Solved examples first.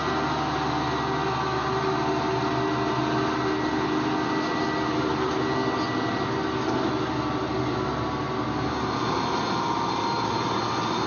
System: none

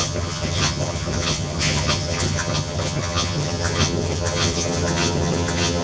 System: vocoder, HiFi-GAN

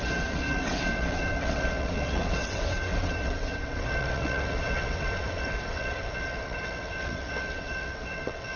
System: vocoder, WaveNeXt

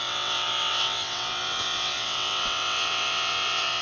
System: vocoder, WaveNeXt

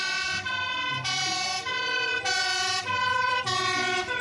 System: vocoder, BigVGAN v2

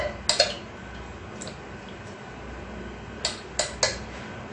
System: none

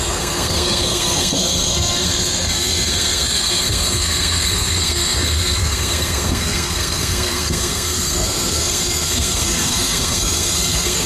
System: codec, SNAC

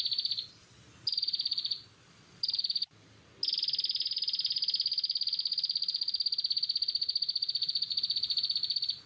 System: none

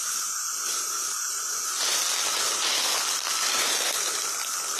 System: none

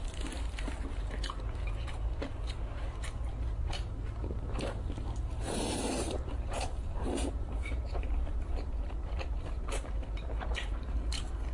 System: vocoder, BigVGAN v2